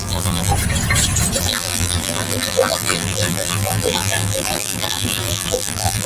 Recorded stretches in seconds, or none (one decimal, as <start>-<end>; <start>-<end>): 0.5-1.4